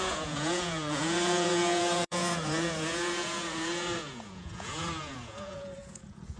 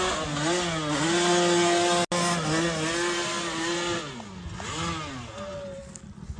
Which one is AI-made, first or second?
first